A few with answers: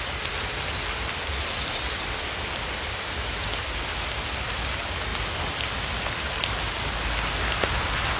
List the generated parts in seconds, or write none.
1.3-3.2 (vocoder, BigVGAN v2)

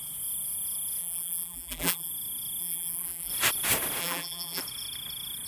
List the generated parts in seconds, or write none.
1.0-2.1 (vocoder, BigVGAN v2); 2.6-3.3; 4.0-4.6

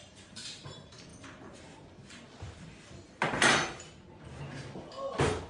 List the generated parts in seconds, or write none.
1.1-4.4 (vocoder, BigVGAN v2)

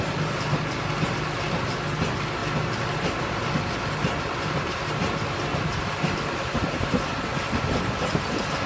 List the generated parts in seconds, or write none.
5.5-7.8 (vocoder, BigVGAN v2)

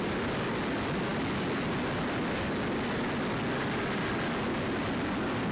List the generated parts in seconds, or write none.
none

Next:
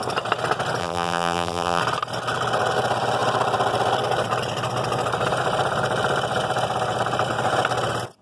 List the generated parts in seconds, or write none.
0.8-1.8 (vocoder, BigVGAN v2)

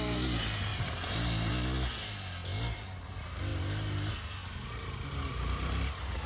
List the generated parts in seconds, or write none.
0.7-1.5 (vocoder, BigVGAN v2)

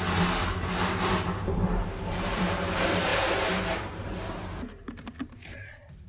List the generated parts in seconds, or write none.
0.0-6.1 (vocoder, BigVGAN v2)